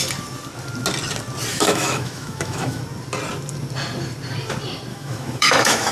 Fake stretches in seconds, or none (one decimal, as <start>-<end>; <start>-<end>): 1.5-2.8; 4.9-5.9

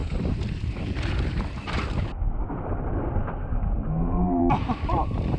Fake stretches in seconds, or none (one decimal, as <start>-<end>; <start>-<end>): 3.5-4.4

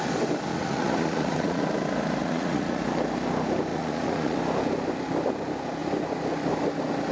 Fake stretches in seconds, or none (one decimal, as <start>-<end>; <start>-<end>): 0.5-1.6; 2.2-2.8; 3.7-4.4

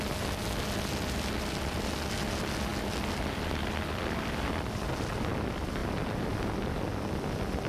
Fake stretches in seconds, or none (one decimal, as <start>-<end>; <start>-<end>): none

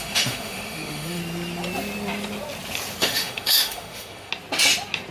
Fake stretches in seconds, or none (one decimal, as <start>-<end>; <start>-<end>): 0.0-1.2; 3.0-4.3

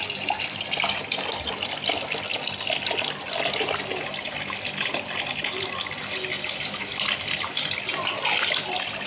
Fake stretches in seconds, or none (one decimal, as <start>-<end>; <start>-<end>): none

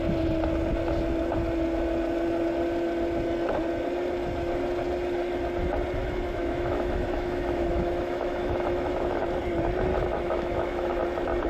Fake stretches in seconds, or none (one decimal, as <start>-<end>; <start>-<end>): 6.0-9.2; 9.9-11.0

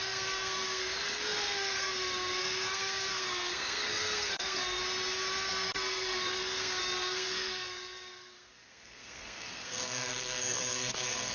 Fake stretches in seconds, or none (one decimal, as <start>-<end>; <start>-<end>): 0.0-4.8; 5.5-11.3